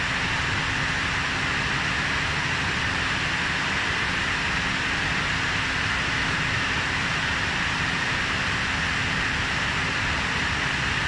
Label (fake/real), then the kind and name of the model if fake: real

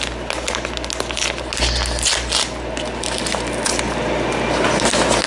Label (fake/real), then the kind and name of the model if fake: real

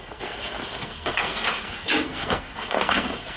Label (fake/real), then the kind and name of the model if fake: fake, codec, SNAC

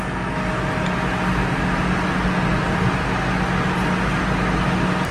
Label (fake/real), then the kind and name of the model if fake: real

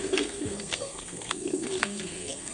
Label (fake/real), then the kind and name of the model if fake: fake, codec, SNAC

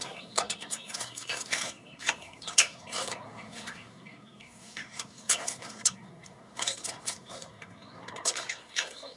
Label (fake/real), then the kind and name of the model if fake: fake, codec, SNAC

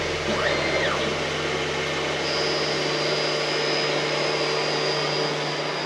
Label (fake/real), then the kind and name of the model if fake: real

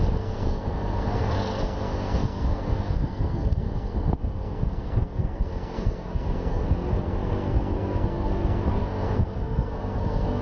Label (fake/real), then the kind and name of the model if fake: fake, codec, SNAC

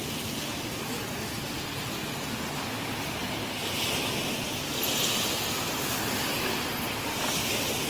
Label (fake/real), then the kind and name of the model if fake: real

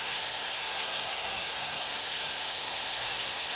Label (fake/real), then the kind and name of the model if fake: fake, codec, SNAC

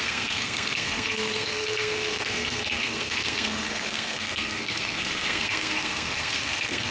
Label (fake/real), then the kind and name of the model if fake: fake, codec, SNAC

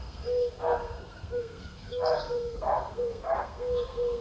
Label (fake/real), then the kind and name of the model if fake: fake, codec, SNAC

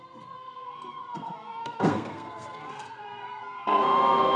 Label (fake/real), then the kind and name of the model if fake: fake, codec, SNAC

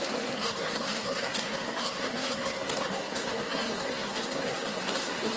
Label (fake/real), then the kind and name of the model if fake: fake, codec, SNAC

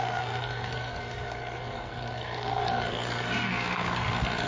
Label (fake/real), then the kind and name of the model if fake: fake, codec, SNAC